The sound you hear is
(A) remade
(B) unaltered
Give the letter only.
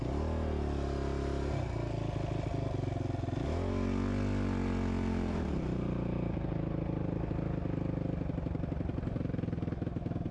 B